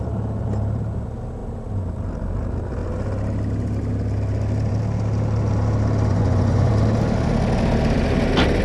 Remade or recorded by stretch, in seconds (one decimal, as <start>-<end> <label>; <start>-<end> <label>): 0.0-6.1 recorded; 6.1-6.7 remade; 6.7-8.6 recorded